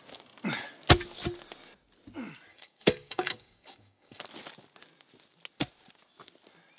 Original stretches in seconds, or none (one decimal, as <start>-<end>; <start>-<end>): 0.0-2.5; 4.2-6.8